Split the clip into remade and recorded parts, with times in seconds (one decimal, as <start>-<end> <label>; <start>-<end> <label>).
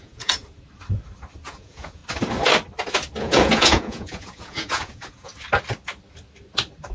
0.0-0.4 remade; 0.4-1.5 recorded; 1.5-2.0 remade; 2.0-3.2 recorded; 3.2-5.3 remade; 5.3-6.9 recorded